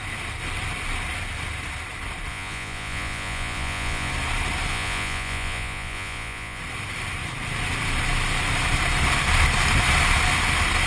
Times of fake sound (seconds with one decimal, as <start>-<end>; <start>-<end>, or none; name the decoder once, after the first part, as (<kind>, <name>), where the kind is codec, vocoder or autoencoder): 2.3-4.1 (vocoder, Vocos); 4.7-6.6